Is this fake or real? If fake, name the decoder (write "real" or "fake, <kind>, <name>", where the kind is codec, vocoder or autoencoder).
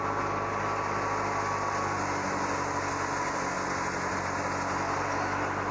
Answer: real